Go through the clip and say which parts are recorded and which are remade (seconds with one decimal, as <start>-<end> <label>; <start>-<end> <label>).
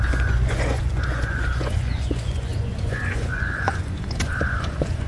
0.0-5.1 remade